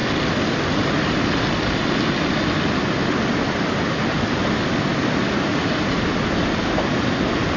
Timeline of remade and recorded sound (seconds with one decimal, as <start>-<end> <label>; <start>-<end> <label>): 0.0-7.6 recorded